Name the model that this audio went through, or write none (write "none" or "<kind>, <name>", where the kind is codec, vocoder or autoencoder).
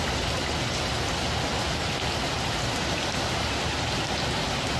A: none